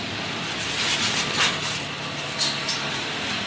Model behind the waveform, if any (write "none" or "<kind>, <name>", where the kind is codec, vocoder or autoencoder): none